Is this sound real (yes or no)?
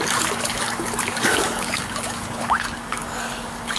no